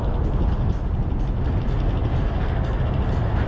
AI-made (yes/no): no